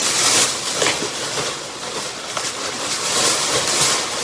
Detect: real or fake real